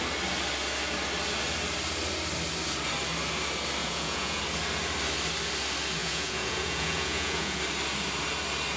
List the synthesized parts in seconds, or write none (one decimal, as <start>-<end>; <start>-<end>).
3.8-4.4; 6.0-7.6